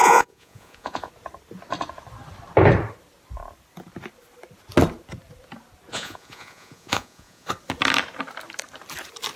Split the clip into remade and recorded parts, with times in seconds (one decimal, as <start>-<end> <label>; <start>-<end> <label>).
0.0-1.1 remade; 1.1-5.9 recorded; 5.9-7.5 remade; 7.5-9.4 recorded